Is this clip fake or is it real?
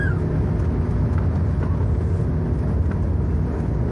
real